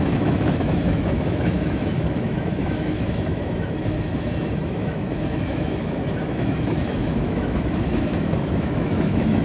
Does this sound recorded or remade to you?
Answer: remade